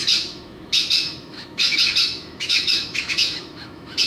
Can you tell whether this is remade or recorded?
remade